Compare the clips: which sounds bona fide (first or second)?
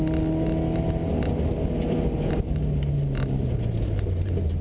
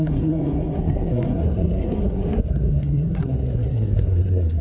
first